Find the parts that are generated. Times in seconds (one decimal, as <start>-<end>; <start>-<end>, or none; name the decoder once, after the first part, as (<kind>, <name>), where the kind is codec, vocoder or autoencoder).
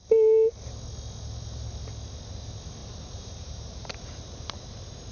2.8-5.1 (vocoder, BigVGAN v2)